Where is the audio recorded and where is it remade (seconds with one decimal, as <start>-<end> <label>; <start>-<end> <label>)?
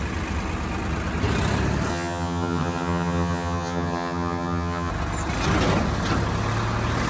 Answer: 0.0-1.9 recorded; 1.9-4.9 remade; 4.9-7.1 recorded